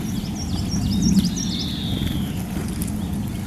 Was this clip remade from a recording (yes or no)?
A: no